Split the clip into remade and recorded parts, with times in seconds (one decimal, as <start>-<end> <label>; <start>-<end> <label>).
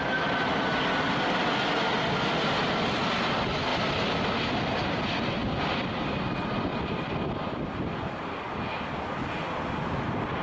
0.0-10.4 recorded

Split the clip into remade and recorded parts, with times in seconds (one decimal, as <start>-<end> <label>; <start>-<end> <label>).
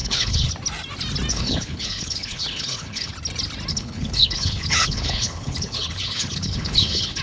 0.0-0.5 remade; 0.5-1.3 recorded; 1.3-3.1 remade; 3.1-3.7 recorded; 3.7-7.2 remade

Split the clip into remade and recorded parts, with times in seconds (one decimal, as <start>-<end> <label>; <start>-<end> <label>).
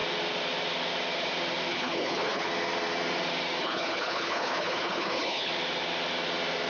0.0-1.7 recorded; 1.7-2.5 remade; 2.5-3.6 recorded; 3.6-5.5 remade; 5.5-6.7 recorded